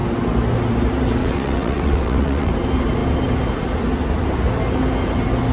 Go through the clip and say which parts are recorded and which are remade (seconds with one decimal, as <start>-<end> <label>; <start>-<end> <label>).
0.0-1.2 recorded; 1.2-2.5 remade; 2.5-5.5 recorded